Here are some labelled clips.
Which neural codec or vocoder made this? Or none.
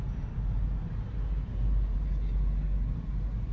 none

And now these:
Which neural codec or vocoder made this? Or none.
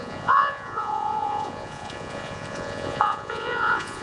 vocoder, Vocos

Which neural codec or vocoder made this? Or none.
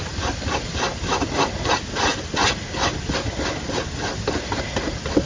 none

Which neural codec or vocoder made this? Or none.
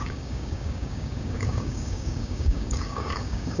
codec, DAC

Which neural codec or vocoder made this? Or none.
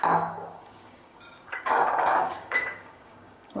codec, DAC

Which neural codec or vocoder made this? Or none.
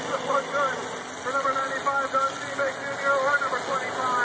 none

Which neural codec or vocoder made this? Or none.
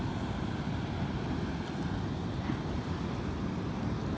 none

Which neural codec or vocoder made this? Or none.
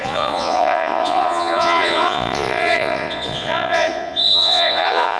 vocoder, Vocos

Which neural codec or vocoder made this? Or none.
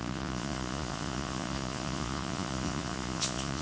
vocoder, Vocos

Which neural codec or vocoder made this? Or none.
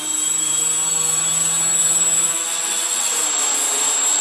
none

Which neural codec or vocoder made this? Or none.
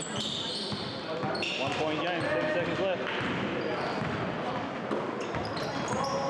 none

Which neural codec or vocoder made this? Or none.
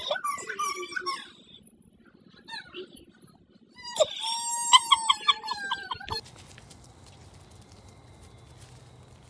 none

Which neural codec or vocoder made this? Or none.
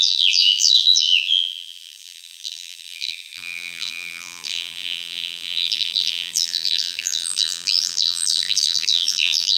vocoder, BigVGAN v2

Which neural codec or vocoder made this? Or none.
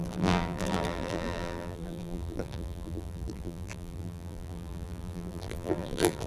vocoder, BigVGAN v2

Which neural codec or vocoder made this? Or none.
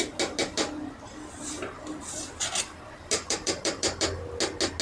none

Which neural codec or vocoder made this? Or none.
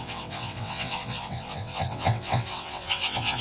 vocoder, WaveNeXt